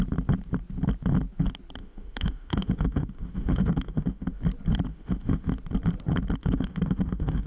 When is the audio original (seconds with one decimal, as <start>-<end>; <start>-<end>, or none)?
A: 0.0-1.8; 4.4-4.9; 5.5-6.4